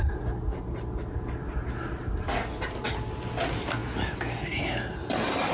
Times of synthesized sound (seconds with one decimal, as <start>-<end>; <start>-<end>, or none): none